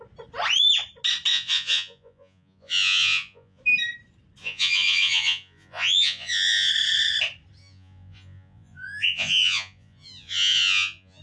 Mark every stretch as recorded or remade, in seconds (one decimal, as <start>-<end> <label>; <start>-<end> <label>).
0.0-1.3 recorded; 1.3-3.6 remade; 3.6-4.4 recorded; 4.4-6.7 remade; 6.7-7.6 recorded; 7.6-11.2 remade